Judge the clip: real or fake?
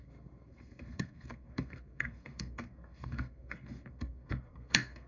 fake